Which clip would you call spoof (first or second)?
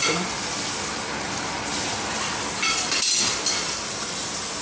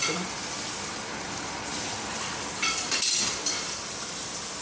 second